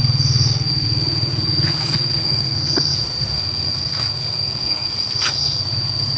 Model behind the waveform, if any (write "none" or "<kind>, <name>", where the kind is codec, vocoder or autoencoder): codec, SNAC